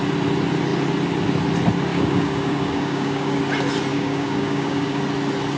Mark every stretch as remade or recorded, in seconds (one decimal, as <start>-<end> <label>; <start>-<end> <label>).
0.0-1.9 recorded; 1.9-3.4 remade; 3.4-3.9 recorded; 3.9-5.0 remade; 5.0-5.6 recorded